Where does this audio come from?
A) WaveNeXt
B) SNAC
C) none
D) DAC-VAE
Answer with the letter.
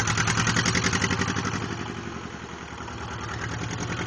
C